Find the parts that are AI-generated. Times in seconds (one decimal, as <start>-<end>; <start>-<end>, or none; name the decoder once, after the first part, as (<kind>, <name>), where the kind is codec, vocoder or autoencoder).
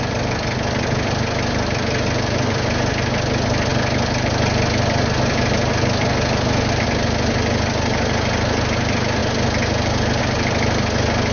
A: none